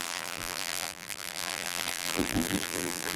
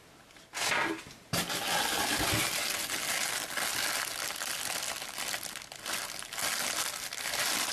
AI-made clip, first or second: first